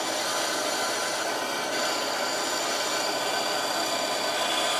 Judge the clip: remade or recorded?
recorded